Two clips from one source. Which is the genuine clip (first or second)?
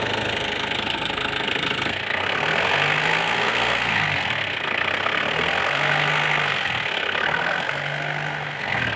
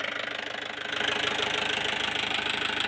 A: second